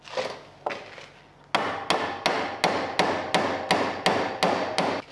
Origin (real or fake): real